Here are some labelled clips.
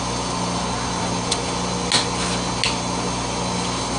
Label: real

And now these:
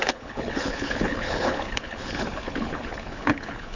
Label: fake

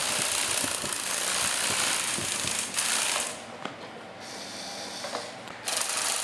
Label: real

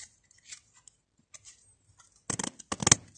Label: real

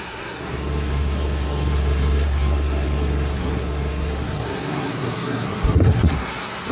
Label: fake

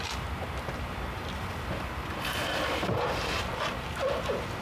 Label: real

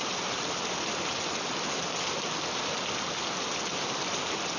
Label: fake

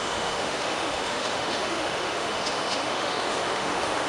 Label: fake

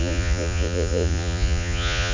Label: fake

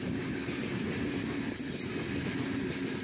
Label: real